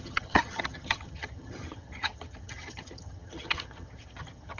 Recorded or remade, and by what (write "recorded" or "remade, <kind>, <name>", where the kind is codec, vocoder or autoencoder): remade, vocoder, HiFi-GAN